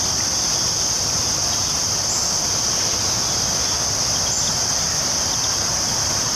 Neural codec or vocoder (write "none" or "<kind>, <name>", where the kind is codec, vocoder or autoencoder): none